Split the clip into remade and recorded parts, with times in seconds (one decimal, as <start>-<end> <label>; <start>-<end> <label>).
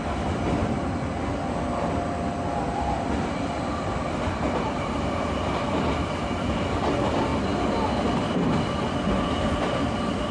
0.0-10.3 recorded